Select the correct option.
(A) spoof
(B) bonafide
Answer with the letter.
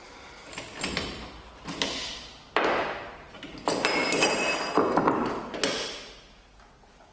B